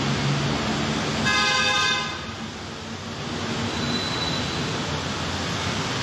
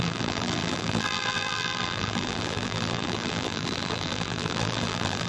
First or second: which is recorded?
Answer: first